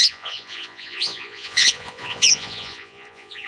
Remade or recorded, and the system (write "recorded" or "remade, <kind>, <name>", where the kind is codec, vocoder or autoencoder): remade, vocoder, Vocos